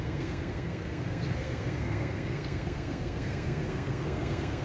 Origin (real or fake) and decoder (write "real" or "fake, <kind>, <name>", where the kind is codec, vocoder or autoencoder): fake, codec, SNAC